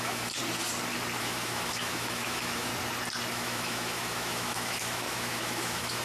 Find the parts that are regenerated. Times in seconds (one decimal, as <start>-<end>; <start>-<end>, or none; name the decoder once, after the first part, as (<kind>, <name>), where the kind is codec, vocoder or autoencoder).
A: 0.0-0.4 (autoencoder, DAC-VAE); 1.2-2.7; 3.3-6.0